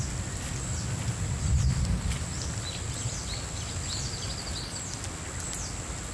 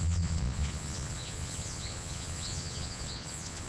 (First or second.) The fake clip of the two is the second